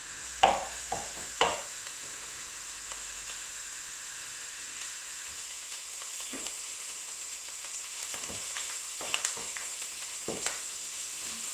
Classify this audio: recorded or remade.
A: remade